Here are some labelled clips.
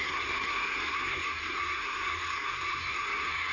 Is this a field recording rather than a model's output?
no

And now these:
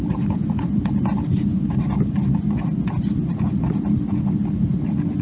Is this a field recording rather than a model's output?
yes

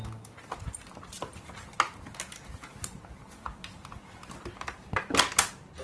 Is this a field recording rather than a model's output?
yes